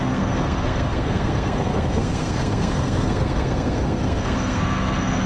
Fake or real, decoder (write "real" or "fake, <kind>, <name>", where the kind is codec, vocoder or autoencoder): fake, codec, SNAC